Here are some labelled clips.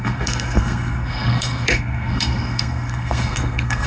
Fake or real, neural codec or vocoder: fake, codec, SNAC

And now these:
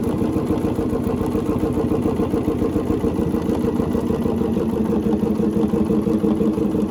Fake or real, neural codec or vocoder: real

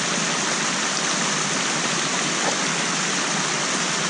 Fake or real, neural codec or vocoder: real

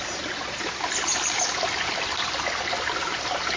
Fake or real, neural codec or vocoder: real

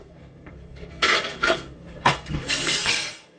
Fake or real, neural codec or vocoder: fake, codec, SNAC